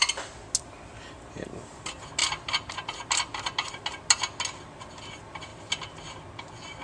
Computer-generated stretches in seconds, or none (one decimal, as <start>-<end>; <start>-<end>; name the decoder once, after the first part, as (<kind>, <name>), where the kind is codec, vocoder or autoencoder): none